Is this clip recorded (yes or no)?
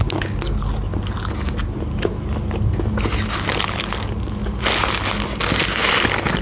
yes